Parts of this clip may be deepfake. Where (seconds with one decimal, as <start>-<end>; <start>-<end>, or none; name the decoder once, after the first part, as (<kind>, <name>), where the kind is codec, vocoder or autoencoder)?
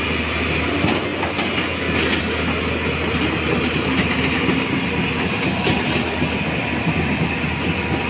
none